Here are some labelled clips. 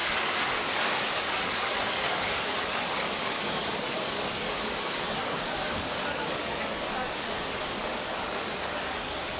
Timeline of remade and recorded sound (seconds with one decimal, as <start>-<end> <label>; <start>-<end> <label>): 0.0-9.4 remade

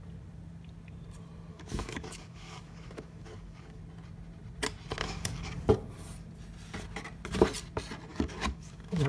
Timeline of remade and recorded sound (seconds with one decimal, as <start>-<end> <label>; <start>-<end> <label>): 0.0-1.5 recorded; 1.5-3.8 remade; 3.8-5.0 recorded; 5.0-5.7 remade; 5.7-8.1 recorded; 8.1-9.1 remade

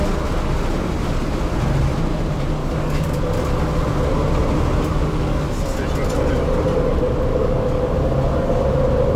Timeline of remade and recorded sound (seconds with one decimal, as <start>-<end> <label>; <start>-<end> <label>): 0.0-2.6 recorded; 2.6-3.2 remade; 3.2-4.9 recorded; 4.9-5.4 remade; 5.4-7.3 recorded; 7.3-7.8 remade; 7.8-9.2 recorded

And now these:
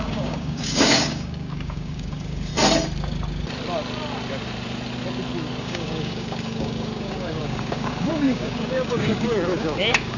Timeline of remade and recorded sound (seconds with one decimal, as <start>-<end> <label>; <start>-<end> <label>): 0.0-2.5 remade; 2.5-5.6 recorded; 5.6-10.2 remade

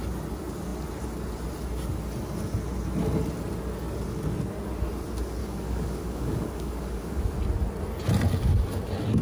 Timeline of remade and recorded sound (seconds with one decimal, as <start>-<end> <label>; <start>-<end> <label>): 0.0-5.4 recorded; 5.4-7.2 remade; 7.2-9.2 recorded